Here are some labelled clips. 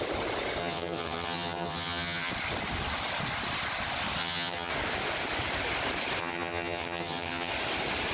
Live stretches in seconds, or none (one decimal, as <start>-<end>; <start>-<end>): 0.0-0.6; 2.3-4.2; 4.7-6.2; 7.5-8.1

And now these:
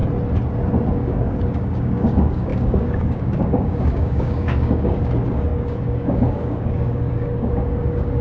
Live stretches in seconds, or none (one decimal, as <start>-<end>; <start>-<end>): 0.0-0.9

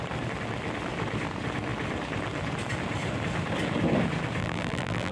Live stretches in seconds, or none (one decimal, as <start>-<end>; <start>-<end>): 0.0-4.4

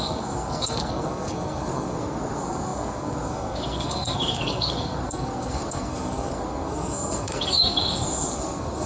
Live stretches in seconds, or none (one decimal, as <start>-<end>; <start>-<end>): none

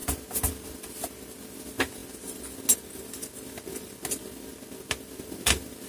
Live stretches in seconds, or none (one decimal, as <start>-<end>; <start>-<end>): 0.0-5.9

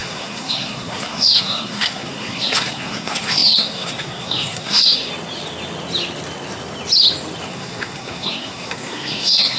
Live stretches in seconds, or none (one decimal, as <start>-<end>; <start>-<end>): 5.1-7.5

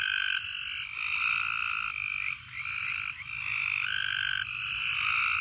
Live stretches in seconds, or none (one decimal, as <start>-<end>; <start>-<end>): none